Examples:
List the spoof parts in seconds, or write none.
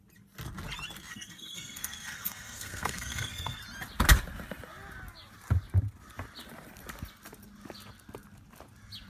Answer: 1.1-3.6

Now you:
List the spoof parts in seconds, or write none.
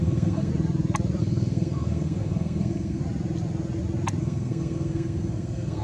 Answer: 0.0-0.5; 1.2-3.0; 4.2-5.8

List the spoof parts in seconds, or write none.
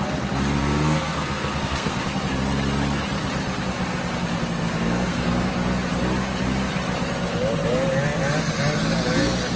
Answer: 0.6-2.0; 4.6-5.5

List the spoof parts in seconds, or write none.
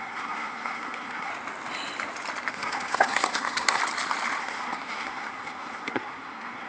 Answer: 0.0-1.3; 2.5-3.8; 4.4-6.7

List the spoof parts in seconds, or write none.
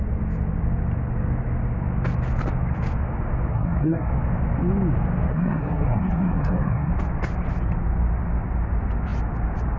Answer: 3.5-4.1; 5.3-6.9